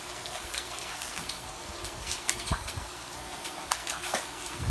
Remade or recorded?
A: remade